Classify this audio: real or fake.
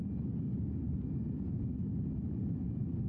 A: real